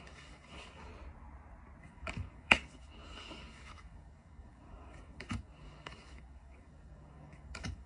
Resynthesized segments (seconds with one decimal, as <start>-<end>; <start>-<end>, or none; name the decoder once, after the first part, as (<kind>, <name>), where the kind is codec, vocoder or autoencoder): 0.0-0.9 (codec, DAC); 1.8-7.9